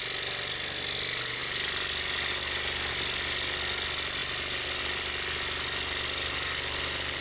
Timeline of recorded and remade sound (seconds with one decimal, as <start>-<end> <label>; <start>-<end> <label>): 0.0-7.2 recorded